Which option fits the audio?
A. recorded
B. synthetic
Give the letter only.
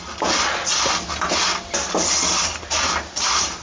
A